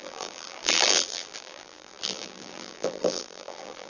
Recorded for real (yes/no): no